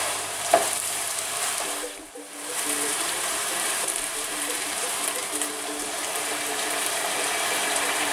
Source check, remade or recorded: remade